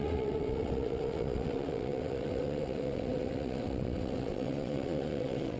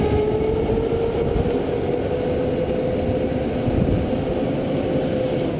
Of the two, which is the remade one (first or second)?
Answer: first